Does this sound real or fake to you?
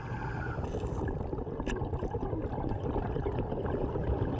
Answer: real